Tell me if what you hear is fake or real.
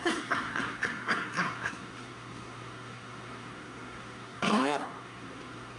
fake